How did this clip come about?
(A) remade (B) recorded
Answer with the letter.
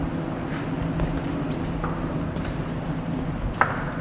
B